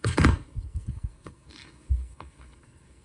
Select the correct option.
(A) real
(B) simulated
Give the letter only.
B